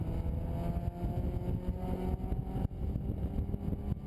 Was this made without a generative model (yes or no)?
yes